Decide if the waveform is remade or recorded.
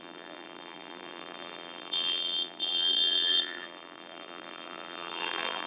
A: remade